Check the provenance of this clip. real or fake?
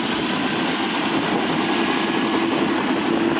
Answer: real